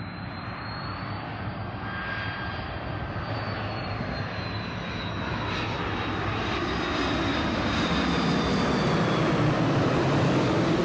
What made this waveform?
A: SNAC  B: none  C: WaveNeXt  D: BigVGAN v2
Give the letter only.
B